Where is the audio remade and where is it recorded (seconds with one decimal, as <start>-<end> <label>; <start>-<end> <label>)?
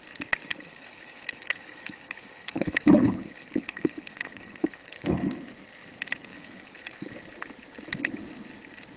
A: 0.0-0.5 recorded; 0.5-5.1 remade; 5.1-6.3 recorded; 6.3-7.1 remade; 7.1-9.0 recorded